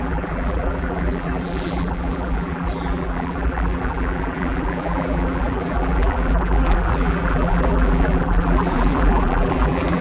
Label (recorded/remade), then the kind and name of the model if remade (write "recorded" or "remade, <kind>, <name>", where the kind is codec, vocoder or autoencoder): remade, vocoder, BigVGAN v2